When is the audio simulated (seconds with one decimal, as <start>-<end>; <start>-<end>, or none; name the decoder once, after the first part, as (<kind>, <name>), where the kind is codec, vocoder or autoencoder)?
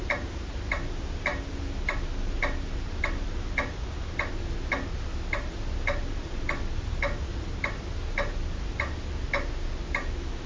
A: none